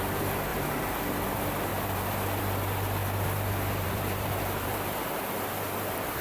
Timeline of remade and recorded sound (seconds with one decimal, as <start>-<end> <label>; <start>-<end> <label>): 0.0-0.5 recorded; 0.5-1.0 remade; 1.0-1.7 recorded; 1.7-2.4 remade; 2.4-3.0 recorded; 3.0-6.2 remade